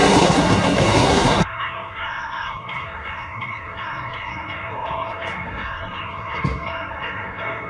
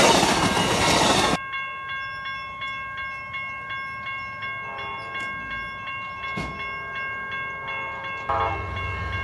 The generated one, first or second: first